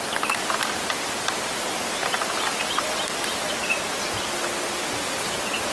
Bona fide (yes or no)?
yes